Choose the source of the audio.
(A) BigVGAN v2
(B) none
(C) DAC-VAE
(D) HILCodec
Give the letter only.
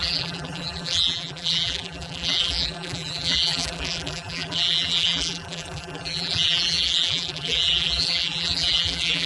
A